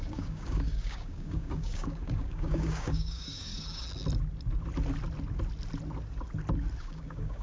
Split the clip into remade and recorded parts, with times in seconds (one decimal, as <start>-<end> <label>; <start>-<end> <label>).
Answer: 0.0-3.5 remade; 3.5-6.8 recorded; 6.8-7.4 remade